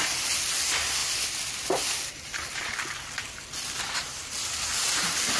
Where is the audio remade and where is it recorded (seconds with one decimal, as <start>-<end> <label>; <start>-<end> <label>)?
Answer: 0.0-1.0 remade; 1.0-1.8 recorded; 1.8-2.7 remade; 2.7-3.3 recorded; 3.3-5.4 remade